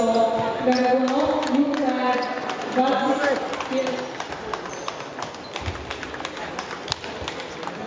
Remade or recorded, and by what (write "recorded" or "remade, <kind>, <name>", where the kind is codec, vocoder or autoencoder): recorded